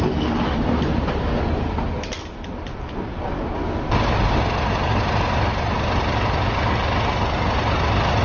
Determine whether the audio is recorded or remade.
recorded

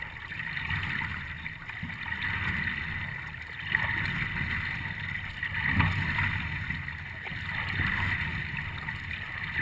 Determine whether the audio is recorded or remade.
recorded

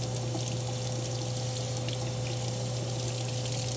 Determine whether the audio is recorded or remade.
recorded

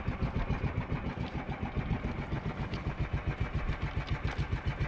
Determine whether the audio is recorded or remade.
recorded